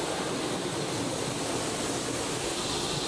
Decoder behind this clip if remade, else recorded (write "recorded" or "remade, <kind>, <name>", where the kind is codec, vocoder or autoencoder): remade, vocoder, BigVGAN v2